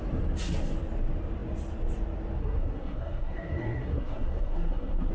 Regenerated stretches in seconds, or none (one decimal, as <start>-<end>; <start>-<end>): 2.4-5.1